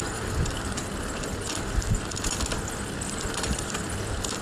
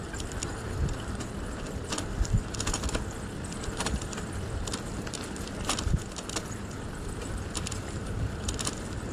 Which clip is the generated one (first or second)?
second